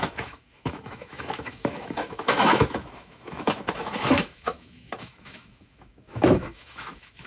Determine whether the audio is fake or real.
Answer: fake